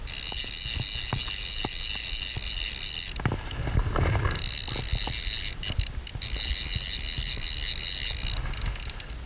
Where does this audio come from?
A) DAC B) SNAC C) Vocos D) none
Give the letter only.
D